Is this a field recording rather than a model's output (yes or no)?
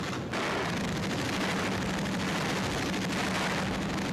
yes